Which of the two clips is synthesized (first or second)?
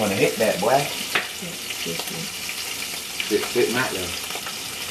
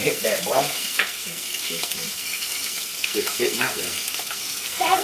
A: second